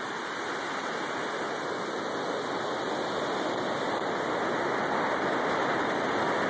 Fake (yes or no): no